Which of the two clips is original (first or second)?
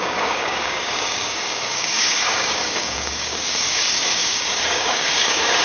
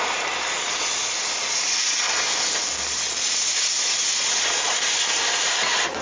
second